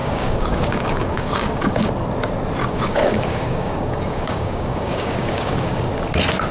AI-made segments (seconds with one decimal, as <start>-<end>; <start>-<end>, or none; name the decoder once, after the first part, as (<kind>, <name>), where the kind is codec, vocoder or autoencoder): 0.0-1.9 (codec, DAC); 2.6-5.8